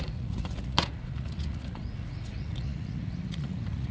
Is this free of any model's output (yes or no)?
no